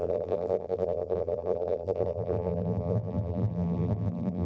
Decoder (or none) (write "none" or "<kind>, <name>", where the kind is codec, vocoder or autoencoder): vocoder, BigVGAN v2